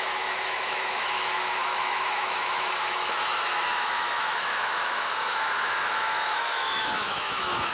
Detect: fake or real fake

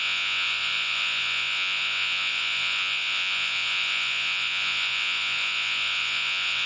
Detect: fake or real fake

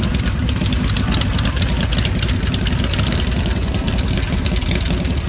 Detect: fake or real real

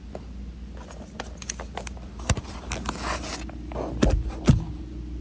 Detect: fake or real real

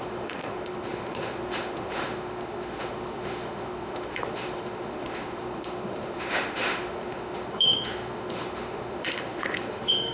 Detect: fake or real fake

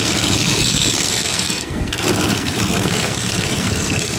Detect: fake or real fake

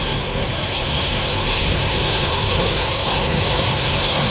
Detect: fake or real fake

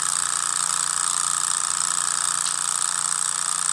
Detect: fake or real real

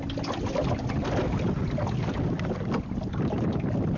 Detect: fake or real real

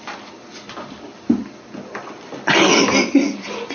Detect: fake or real real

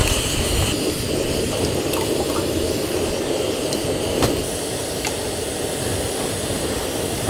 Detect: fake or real real